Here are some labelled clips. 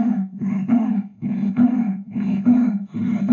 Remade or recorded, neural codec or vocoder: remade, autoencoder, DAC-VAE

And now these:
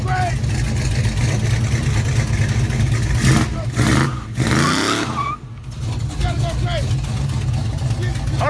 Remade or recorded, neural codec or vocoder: recorded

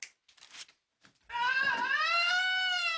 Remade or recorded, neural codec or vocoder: recorded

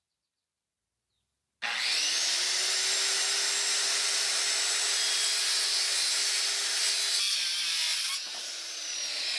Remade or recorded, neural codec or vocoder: recorded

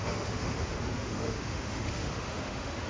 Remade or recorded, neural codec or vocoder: remade, autoencoder, DAC-VAE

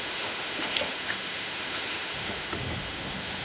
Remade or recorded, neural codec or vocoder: remade, autoencoder, DAC-VAE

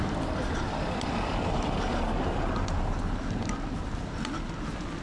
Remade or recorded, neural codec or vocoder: recorded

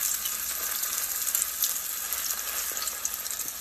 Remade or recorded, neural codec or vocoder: recorded